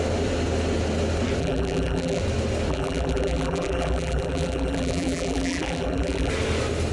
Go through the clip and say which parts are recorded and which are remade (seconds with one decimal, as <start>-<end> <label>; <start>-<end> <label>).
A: 0.0-1.4 recorded; 1.4-2.2 remade; 2.2-2.7 recorded; 2.7-6.3 remade; 6.3-6.9 recorded